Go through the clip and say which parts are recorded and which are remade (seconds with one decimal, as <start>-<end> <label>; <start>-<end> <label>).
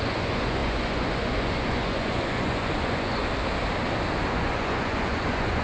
0.0-3.2 remade; 3.2-4.3 recorded; 4.3-5.6 remade